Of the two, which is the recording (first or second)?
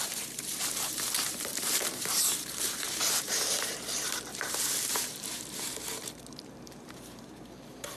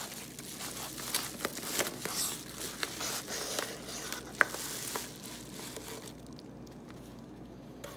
second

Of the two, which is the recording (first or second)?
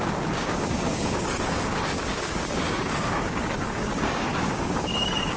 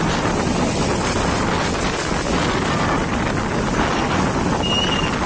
second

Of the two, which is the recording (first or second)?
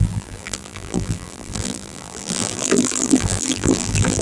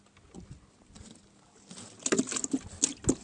second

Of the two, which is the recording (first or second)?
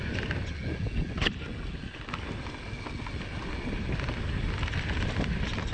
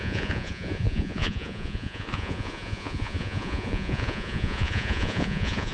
first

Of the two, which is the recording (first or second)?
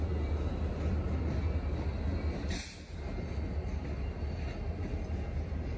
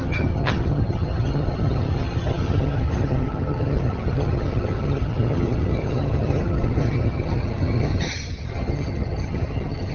first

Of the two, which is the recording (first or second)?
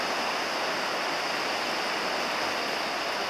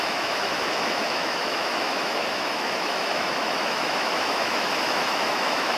first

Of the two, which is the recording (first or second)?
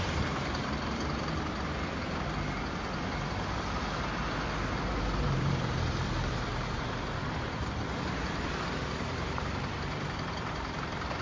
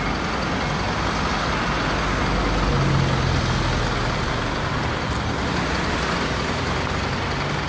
second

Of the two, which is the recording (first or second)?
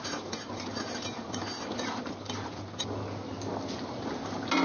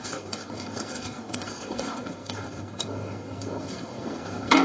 first